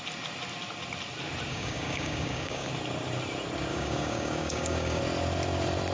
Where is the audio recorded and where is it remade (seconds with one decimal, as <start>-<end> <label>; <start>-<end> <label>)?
0.0-1.5 recorded; 1.5-2.7 remade; 2.7-3.7 recorded; 3.7-5.0 remade; 5.0-5.9 recorded